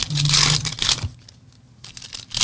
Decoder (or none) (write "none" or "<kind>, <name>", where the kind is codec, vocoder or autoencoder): none